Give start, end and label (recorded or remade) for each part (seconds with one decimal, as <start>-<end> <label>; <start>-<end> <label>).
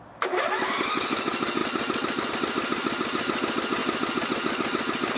0.0-5.2 recorded